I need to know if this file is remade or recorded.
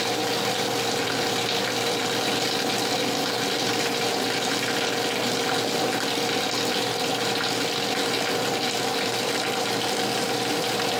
recorded